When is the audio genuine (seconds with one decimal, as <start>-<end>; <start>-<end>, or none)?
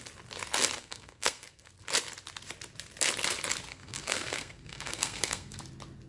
0.0-0.8; 1.7-3.7; 5.6-6.1